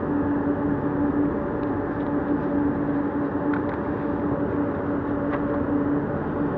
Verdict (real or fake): real